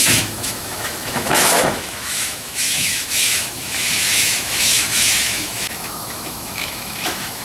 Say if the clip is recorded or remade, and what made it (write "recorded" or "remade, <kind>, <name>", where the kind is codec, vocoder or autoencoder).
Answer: remade, autoencoder, DAC-VAE